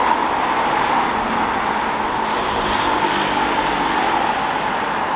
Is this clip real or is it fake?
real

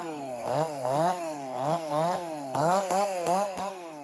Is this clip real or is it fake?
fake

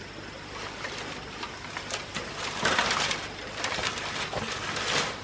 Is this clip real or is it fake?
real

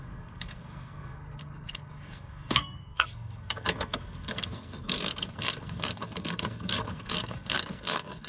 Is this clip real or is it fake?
fake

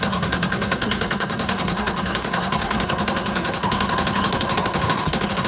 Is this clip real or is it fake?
fake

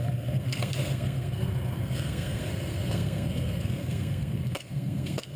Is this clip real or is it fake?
fake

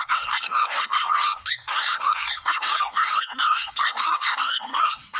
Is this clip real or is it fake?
fake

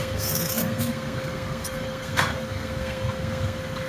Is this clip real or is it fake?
fake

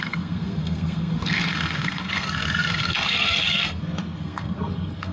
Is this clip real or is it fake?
fake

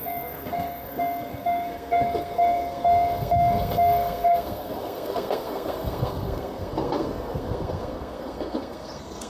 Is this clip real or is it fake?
fake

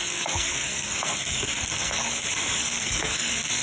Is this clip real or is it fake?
fake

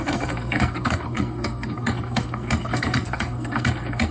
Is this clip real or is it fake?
fake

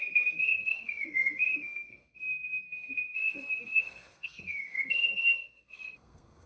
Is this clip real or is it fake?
fake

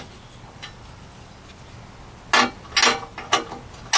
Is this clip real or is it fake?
real